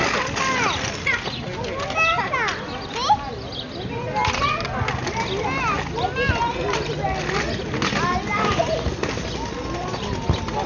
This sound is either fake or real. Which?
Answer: real